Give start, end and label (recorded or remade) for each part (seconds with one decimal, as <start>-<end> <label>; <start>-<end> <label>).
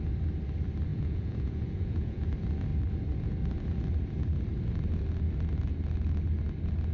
0.0-0.9 recorded; 0.9-2.2 remade; 2.2-6.9 recorded